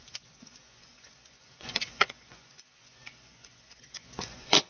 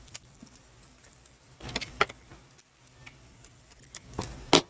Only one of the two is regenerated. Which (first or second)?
first